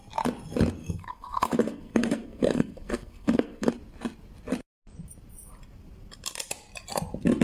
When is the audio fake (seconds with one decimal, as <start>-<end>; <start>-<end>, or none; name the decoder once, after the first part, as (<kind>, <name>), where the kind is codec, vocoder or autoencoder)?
0.8-3.7 (codec, SNAC)